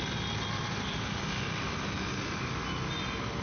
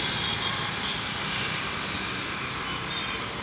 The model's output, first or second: second